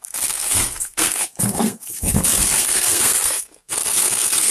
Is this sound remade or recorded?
remade